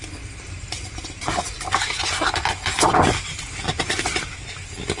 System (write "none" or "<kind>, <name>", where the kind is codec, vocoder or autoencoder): none